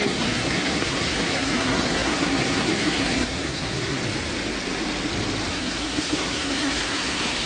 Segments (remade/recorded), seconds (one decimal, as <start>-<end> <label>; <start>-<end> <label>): 0.0-4.0 remade; 4.0-5.5 recorded; 5.5-7.5 remade